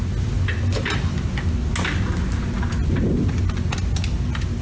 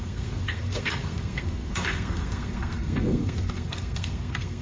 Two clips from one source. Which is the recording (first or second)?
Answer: first